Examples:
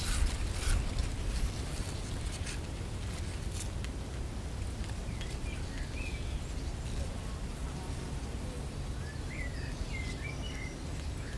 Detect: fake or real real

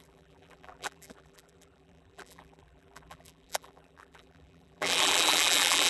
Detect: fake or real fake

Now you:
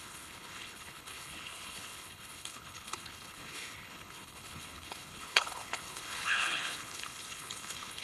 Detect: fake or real fake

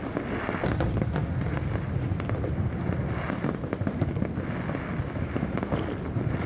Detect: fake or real real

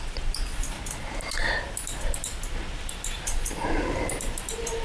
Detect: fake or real real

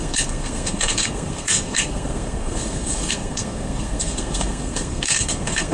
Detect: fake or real fake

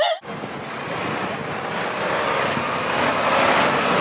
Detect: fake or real real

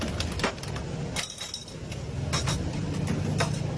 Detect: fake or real real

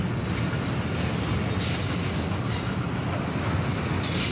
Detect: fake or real real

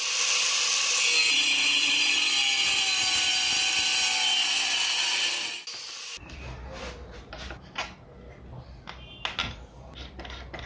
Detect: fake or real real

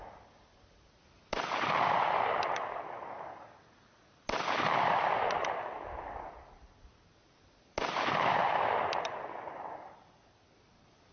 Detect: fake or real real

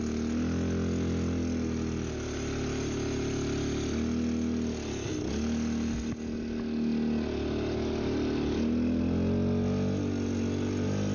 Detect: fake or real real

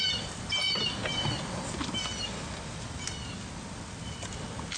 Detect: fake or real real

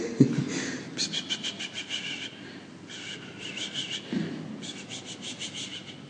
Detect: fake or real real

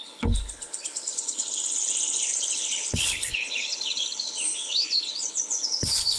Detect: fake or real fake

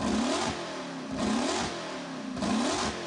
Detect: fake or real real